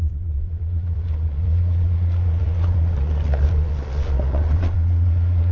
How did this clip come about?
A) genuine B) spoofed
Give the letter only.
B